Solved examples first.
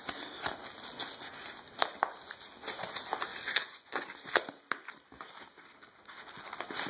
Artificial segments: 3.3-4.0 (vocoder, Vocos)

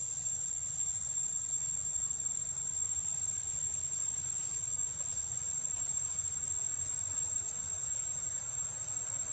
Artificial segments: 7.8-8.4 (vocoder, Vocos)

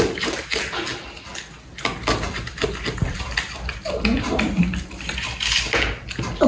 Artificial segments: none